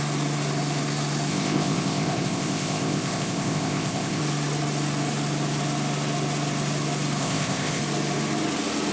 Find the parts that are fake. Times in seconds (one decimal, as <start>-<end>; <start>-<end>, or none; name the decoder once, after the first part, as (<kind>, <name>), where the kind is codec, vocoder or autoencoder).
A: 1.3-4.2 (codec, ZipCodec); 7.2-7.8